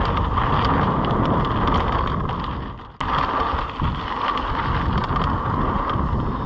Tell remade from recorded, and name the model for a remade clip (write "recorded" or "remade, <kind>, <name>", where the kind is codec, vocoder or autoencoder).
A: recorded